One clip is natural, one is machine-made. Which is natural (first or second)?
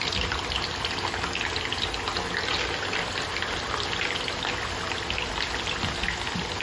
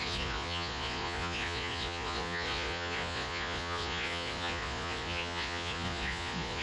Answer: first